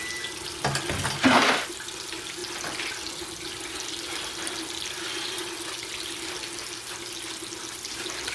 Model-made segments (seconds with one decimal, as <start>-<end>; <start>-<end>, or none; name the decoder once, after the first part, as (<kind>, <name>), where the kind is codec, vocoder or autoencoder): none